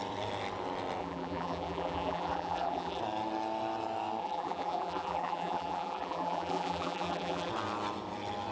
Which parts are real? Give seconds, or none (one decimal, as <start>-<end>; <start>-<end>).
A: 0.0-1.0; 3.0-4.2; 7.5-8.5